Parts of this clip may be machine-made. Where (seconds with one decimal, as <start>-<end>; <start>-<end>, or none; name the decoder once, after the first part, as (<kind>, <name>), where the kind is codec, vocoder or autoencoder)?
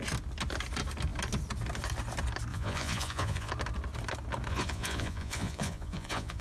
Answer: 2.5-3.5 (vocoder, Vocos); 4.5-6.4